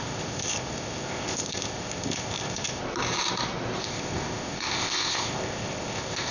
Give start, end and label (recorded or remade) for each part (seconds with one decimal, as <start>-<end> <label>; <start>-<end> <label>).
0.0-2.8 remade; 2.8-3.8 recorded; 3.8-6.3 remade

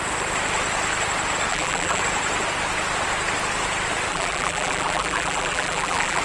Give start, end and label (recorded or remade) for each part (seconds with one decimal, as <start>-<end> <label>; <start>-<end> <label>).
0.0-1.5 recorded; 1.5-2.0 remade; 2.0-4.1 recorded; 4.1-6.2 remade

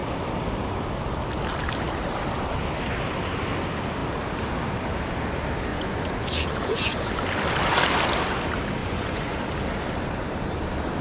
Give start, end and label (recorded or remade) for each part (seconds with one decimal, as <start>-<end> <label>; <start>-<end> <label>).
0.0-5.7 recorded; 5.7-7.1 remade; 7.1-8.8 recorded; 8.8-9.4 remade; 9.4-11.0 recorded